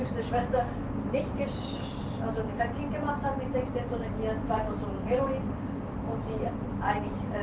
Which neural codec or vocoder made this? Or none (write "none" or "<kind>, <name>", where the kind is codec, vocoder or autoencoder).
none